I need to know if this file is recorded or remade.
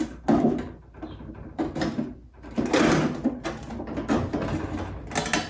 recorded